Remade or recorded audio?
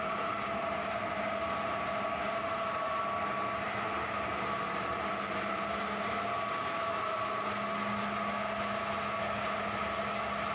recorded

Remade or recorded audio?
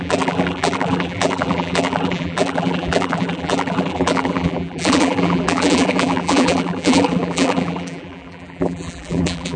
remade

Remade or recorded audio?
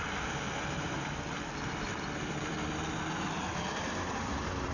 remade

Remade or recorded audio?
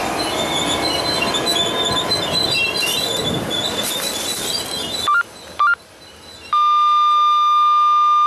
recorded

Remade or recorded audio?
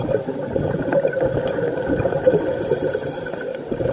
remade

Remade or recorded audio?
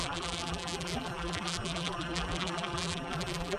remade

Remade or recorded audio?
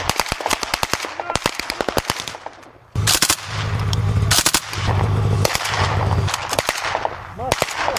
recorded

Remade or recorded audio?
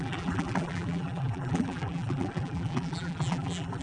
remade